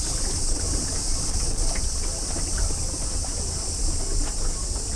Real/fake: real